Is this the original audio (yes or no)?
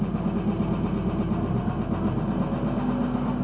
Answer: yes